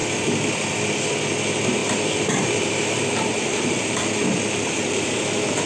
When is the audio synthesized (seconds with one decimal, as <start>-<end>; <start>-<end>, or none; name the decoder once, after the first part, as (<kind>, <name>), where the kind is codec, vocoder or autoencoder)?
1.8-5.2 (vocoder, BigVGAN v2)